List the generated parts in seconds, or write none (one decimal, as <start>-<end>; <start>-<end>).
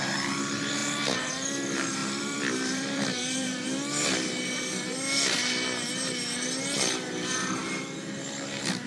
2.0-4.3